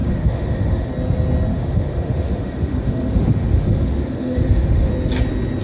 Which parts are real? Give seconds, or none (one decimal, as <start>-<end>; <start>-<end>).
0.9-1.5; 4.9-5.6